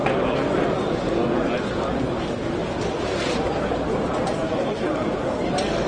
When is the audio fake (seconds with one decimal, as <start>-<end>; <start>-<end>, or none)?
2.6-5.5